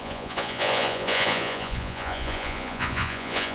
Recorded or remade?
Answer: remade